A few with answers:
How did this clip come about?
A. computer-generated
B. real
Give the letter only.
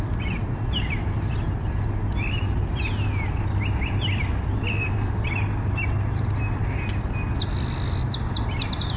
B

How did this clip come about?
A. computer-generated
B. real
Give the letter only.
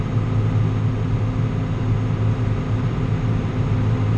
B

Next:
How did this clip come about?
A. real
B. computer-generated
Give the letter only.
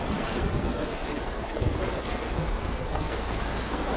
B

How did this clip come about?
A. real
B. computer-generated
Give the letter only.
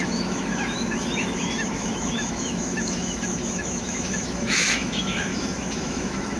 B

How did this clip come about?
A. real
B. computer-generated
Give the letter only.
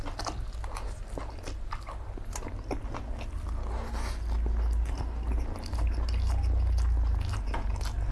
A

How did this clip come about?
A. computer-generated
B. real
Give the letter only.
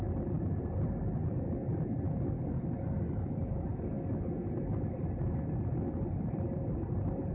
B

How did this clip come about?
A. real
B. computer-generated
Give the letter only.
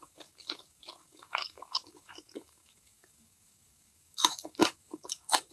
B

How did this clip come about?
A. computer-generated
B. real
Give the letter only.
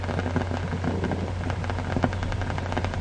B